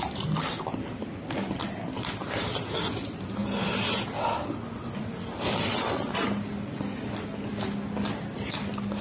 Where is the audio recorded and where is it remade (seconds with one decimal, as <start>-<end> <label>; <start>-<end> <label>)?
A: 0.0-9.0 recorded